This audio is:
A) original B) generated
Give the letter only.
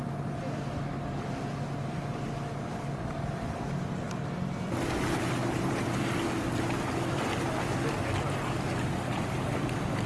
A